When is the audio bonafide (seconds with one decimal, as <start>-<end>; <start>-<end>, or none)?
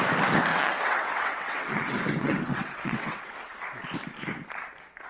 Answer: 0.0-0.5; 3.6-5.1